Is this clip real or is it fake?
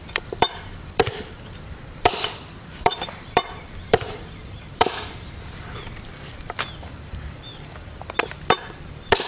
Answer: fake